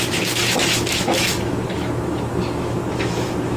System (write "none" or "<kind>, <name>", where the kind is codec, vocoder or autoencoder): autoencoder, DAC-VAE